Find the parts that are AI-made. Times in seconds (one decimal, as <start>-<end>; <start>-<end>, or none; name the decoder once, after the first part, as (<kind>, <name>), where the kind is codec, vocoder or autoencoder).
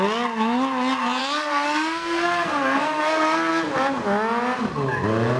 1.2-3.5 (codec, SNAC)